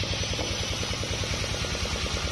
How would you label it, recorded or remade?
recorded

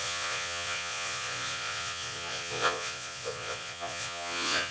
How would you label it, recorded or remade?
remade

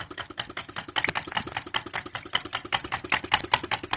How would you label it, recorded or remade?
recorded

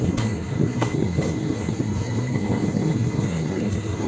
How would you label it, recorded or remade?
remade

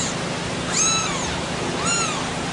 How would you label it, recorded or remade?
recorded